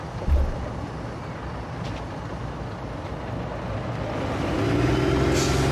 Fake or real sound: real